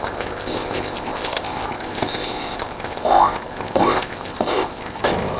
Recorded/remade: remade